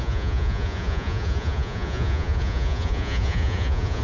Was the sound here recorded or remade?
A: remade